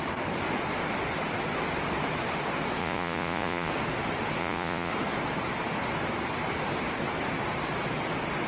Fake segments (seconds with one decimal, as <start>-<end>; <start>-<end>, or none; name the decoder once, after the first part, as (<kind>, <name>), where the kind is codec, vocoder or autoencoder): 2.8-3.7 (vocoder, Vocos); 4.4-4.9